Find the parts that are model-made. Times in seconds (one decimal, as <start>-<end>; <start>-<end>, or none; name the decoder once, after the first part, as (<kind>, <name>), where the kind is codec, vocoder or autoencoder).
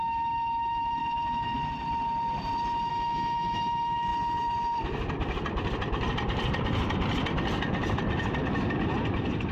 0.0-1.0 (autoencoder, DAC-VAE); 2.9-4.1